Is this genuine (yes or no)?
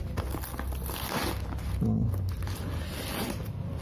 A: yes